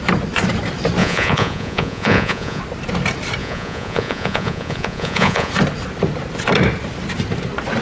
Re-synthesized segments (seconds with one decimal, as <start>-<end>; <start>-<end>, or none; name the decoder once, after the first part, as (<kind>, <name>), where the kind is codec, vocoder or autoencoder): 1.0-2.6 (vocoder, Vocos); 3.4-5.5